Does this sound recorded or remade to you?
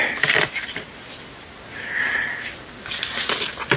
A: recorded